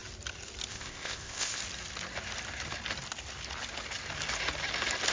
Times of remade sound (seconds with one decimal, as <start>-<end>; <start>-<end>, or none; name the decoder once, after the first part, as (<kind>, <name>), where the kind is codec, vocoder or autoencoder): 0.7-1.6 (codec, ZipCodec)